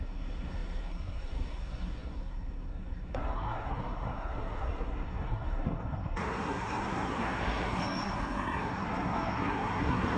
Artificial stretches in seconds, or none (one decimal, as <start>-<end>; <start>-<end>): 0.0-10.2